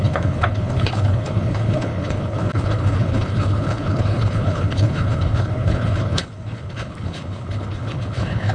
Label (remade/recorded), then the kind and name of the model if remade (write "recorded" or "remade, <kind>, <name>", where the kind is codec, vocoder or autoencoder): remade, codec, HILCodec